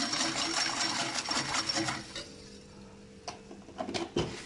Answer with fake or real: real